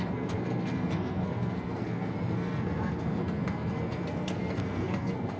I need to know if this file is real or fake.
fake